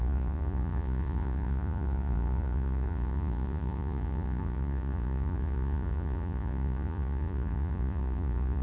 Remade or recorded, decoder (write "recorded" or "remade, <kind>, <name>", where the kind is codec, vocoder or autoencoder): remade, vocoder, Vocos